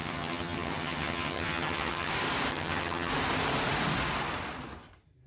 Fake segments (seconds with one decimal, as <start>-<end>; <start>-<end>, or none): 0.0-2.1; 2.5-3.1

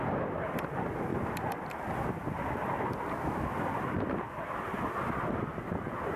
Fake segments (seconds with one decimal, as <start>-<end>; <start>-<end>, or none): none

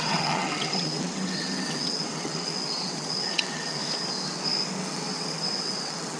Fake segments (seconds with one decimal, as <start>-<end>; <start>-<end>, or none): 0.0-3.8; 4.8-6.2

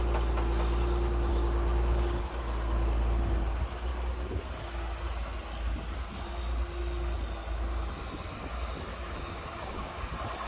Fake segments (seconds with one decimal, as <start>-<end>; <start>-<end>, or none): 1.3-2.2; 8.9-10.1

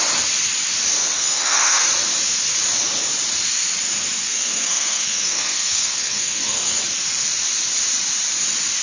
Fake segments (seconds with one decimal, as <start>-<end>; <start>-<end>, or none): 1.2-1.9; 4.2-6.8

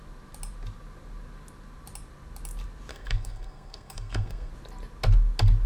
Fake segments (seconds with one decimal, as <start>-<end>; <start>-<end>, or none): 2.9-4.5

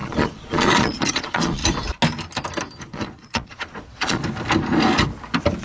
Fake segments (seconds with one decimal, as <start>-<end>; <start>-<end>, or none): 0.0-1.6; 2.8-4.2

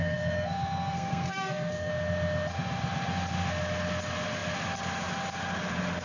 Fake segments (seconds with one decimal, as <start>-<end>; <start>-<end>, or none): 0.0-1.9